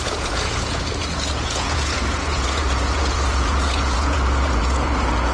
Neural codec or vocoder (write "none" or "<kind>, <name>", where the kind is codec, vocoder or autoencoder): vocoder, Vocos